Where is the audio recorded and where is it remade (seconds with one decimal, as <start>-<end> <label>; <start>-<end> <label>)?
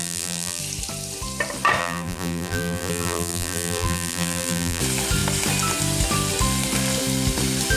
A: 0.0-0.6 remade; 0.6-1.8 recorded; 1.8-4.8 remade; 4.8-7.8 recorded